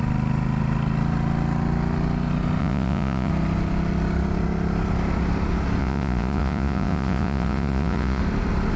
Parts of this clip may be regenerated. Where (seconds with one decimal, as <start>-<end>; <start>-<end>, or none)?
2.6-3.3; 5.8-8.2